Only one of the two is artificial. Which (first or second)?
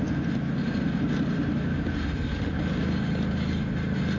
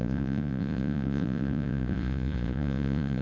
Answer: second